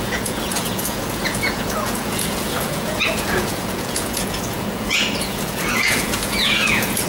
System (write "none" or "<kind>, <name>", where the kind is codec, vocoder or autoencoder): vocoder, Vocos